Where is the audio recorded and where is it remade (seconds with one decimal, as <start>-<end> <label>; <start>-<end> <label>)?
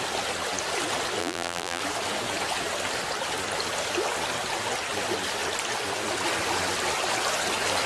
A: 0.0-1.2 recorded; 1.2-1.8 remade; 1.8-7.9 recorded